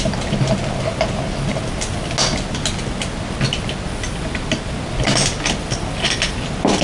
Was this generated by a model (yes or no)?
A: no